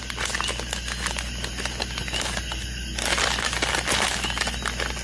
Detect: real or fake real